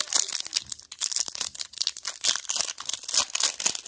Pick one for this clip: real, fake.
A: real